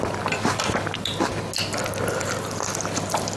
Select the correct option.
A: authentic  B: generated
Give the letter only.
A